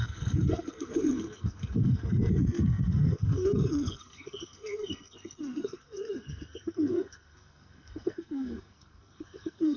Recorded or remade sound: remade